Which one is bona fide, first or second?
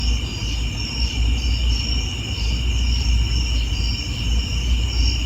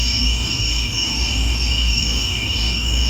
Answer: first